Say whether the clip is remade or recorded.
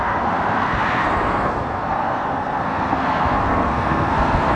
remade